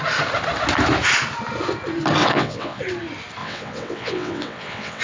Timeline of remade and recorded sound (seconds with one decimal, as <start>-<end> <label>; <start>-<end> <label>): 0.0-2.2 recorded; 2.2-2.8 remade; 2.8-3.4 recorded; 3.4-5.0 remade